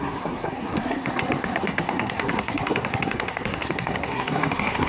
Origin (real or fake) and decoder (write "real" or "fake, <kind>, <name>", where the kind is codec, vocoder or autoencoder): fake, codec, SNAC